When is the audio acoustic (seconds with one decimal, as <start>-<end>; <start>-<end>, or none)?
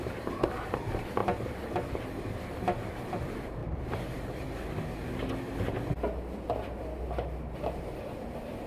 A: 1.2-3.0; 3.6-7.8